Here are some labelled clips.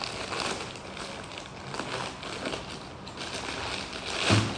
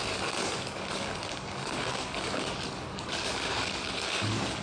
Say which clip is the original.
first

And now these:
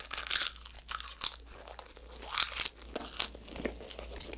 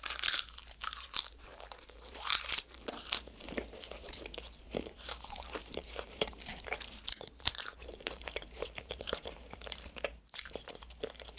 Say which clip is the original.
first